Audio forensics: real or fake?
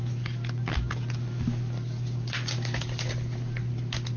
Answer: real